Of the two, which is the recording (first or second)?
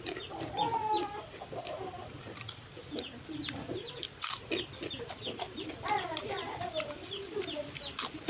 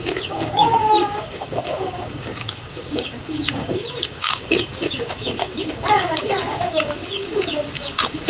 first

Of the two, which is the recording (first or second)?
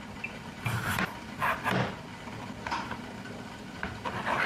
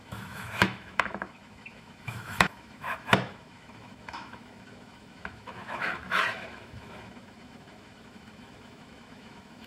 first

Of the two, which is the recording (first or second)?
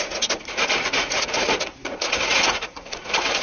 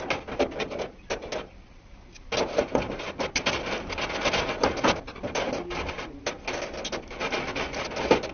second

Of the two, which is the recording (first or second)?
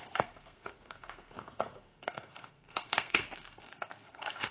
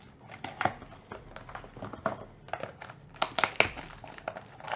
second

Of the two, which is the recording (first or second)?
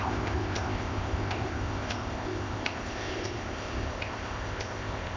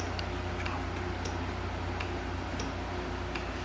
second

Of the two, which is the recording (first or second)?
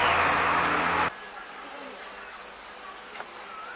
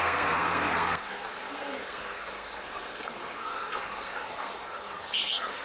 first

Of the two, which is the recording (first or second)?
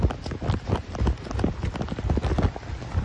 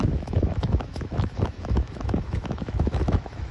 first